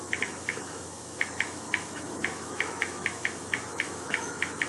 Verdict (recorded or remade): remade